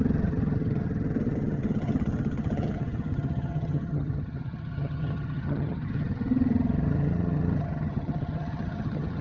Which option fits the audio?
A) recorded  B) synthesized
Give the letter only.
B